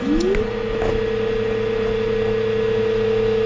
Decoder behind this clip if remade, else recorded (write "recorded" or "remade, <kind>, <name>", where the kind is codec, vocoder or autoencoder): recorded